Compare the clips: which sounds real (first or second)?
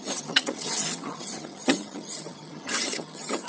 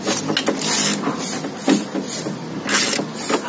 second